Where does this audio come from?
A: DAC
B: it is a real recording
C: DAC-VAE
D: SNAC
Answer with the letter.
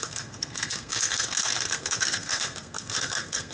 D